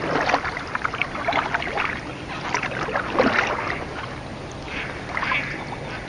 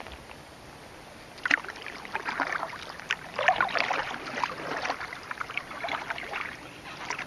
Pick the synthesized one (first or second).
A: second